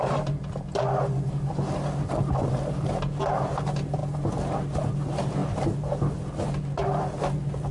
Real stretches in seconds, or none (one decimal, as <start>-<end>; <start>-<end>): 0.0-7.7